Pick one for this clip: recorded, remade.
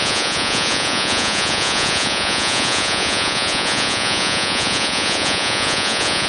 remade